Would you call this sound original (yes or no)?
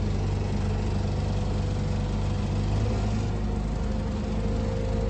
yes